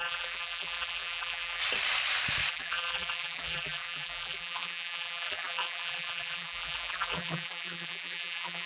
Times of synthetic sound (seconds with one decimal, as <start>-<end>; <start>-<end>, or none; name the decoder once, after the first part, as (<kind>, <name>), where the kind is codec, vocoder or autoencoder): 0.0-1.6 (vocoder, BigVGAN v2); 2.5-8.7